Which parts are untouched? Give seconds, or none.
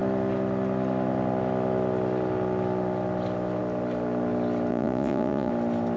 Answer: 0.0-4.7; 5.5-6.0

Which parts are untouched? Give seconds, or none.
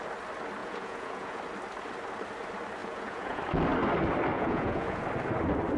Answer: 0.0-0.6; 1.4-2.8; 3.4-4.3; 5.0-5.8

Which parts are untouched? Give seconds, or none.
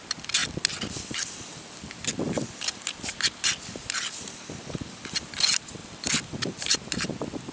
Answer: 0.0-7.5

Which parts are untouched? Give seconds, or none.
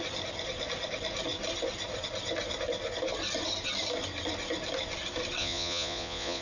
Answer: 0.0-5.4